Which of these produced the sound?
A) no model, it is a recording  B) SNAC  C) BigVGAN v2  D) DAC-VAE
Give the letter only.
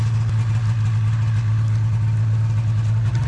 A